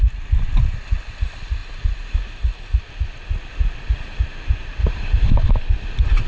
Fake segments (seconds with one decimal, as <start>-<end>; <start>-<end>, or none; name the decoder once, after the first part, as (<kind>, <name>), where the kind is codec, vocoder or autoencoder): 4.8-5.5 (vocoder, BigVGAN v2)